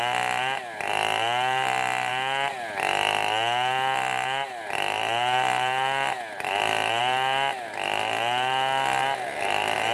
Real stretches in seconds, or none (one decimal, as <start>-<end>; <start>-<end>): 0.0-9.9